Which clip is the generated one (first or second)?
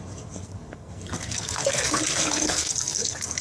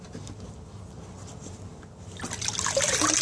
first